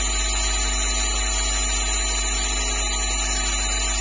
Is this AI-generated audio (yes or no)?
no